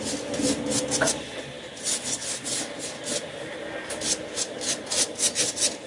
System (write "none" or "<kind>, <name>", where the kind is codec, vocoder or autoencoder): none